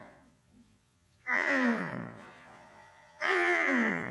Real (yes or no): no